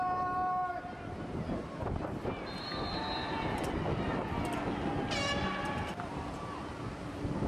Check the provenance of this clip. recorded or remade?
recorded